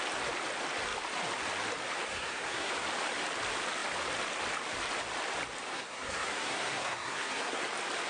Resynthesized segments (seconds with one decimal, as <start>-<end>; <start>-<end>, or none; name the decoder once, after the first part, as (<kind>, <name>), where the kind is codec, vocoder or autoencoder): 2.1-2.7 (codec, SNAC); 5.7-7.6